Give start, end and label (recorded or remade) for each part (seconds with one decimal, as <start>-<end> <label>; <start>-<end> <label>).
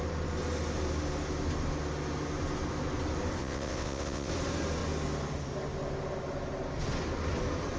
0.0-3.4 recorded; 3.4-4.3 remade; 4.3-7.8 recorded